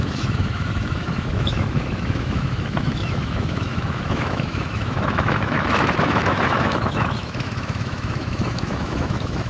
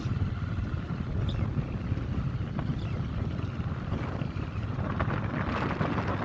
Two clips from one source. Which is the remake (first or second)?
first